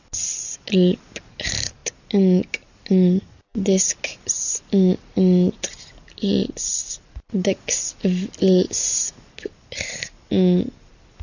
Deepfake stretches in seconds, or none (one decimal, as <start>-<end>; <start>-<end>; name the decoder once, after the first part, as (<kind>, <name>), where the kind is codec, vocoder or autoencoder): none